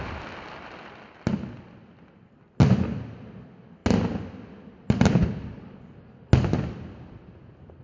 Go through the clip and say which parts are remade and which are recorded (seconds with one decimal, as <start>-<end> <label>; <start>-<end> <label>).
0.0-7.8 recorded